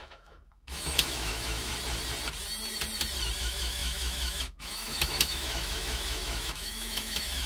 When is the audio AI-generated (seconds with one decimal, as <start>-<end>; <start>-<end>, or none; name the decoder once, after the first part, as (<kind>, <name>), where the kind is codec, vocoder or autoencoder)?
0.0-1.7 (autoencoder, DAC-VAE); 3.4-7.5